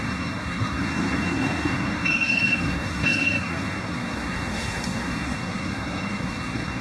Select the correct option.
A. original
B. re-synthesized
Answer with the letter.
B